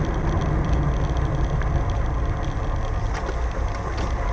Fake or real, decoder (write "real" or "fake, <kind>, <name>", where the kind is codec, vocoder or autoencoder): real